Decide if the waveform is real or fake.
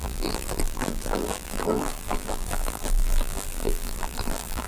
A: fake